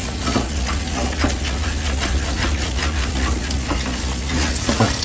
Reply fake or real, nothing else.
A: fake